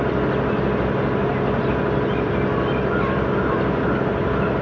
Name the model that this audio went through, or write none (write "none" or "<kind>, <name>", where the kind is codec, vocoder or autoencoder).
none